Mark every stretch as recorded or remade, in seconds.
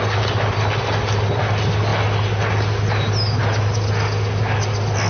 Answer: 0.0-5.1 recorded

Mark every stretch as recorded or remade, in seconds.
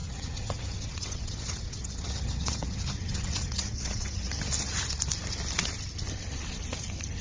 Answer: 0.0-4.3 remade; 4.3-7.2 recorded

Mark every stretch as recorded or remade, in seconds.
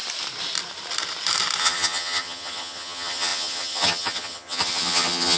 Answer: 0.0-1.6 recorded; 1.6-5.4 remade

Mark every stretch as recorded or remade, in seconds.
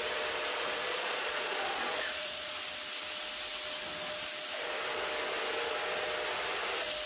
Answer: 0.0-0.8 recorded; 0.8-2.5 remade; 2.5-7.1 recorded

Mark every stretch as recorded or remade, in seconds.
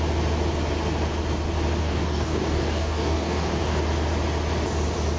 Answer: 0.0-1.8 recorded; 1.8-3.8 remade; 3.8-5.2 recorded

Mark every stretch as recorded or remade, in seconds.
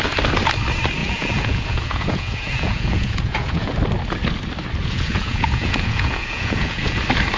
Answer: 0.0-1.0 recorded; 1.0-3.7 remade; 3.7-4.8 recorded; 4.8-7.0 remade; 7.0-7.4 recorded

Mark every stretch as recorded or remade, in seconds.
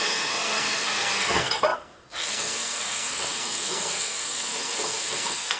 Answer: 0.0-5.6 remade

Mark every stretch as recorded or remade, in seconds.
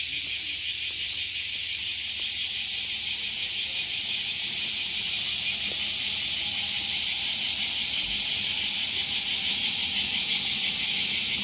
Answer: 0.0-11.4 recorded